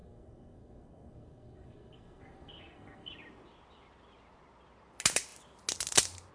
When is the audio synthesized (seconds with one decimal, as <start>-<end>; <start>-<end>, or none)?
0.0-3.1